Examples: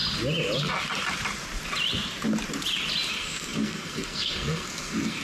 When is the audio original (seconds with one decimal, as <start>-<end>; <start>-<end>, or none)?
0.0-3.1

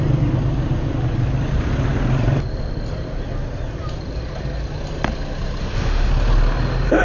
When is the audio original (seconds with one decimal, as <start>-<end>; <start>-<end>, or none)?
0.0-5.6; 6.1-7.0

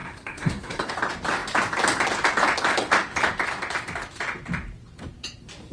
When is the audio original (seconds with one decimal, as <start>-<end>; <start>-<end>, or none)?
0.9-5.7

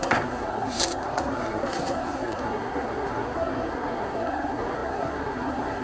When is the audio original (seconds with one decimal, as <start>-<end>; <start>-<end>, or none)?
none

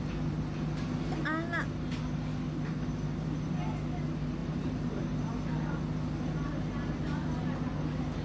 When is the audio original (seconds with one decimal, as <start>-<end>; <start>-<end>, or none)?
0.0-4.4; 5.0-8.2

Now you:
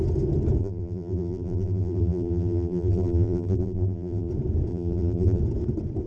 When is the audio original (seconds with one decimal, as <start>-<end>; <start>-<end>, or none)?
0.0-0.6; 4.3-4.7; 5.4-6.1

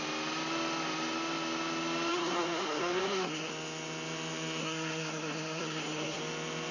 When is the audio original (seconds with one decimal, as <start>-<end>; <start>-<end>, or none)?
0.0-2.1; 3.5-4.6; 6.2-6.7

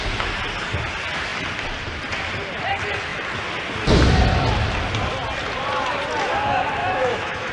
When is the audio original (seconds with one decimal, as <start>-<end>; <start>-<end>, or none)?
0.0-6.8